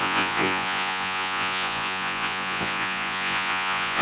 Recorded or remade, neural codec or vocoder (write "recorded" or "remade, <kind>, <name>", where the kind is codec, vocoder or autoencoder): remade, vocoder, Vocos